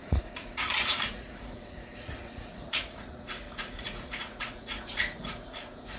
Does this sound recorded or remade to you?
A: remade